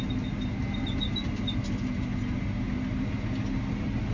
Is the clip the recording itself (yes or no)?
yes